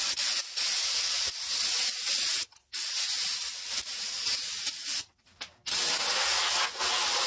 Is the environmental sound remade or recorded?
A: recorded